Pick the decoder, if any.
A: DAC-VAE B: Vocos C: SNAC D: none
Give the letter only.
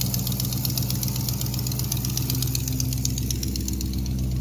D